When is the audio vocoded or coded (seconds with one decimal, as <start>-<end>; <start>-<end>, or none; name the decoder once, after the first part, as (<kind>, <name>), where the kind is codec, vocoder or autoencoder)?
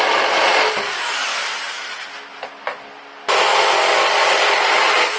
none